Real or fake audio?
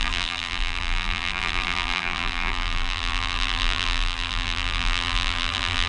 fake